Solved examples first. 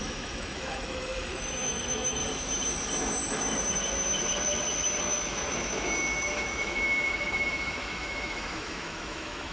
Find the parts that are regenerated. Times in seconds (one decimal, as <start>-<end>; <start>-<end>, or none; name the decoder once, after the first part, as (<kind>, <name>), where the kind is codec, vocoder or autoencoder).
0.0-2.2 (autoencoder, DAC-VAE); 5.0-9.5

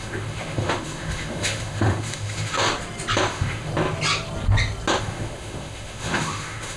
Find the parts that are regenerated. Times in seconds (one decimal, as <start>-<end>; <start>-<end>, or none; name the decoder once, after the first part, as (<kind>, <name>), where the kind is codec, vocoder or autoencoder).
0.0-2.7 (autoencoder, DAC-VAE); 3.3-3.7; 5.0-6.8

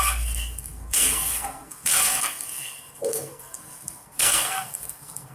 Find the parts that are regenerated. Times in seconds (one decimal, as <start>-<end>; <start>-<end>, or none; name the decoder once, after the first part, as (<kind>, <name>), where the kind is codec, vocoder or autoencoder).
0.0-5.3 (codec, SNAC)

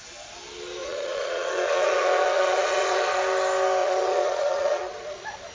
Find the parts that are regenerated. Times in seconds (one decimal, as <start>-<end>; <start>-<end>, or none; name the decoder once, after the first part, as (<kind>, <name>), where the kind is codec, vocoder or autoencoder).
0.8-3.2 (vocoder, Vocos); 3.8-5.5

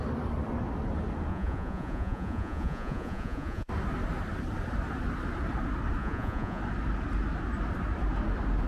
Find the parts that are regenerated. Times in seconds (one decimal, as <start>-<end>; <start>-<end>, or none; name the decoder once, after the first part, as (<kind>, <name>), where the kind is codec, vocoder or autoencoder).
1.3-3.7 (vocoder, Vocos); 6.0-6.6

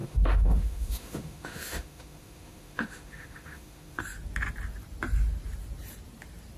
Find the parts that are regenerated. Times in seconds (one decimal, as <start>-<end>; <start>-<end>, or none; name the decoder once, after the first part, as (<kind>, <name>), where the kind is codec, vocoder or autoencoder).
0.0-4.0 (autoencoder, DAC-VAE)

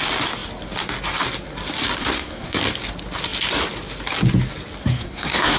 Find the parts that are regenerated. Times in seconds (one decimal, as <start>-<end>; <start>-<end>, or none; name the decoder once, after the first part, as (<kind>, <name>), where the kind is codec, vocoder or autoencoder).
2.0-2.6 (codec, SNAC); 4.8-5.6

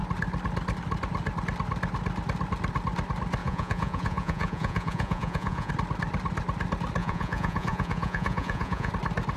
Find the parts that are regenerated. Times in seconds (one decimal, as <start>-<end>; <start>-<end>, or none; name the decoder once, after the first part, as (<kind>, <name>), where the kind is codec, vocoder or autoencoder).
3.4-5.7 (vocoder, Vocos); 7.0-8.9